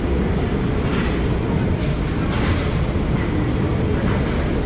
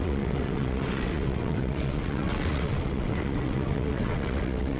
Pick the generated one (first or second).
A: second